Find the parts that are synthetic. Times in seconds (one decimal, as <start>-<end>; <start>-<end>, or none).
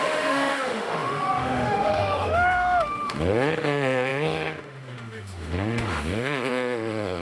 0.0-7.2